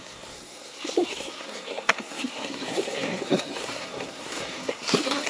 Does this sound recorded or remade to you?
remade